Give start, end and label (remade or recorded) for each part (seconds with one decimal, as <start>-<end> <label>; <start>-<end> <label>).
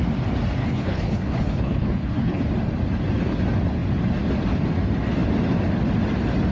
0.0-0.6 recorded; 0.6-2.4 remade; 2.4-6.5 recorded